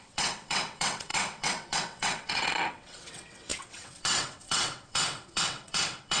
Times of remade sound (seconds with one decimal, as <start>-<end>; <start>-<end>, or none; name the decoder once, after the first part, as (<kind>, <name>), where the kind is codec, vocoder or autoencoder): 0.0-6.2 (vocoder, WaveNeXt)